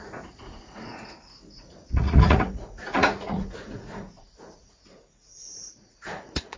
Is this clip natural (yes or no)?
no